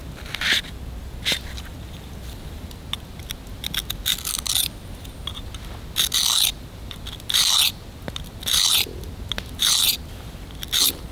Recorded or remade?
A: recorded